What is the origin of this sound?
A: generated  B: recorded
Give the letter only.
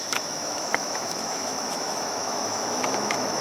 A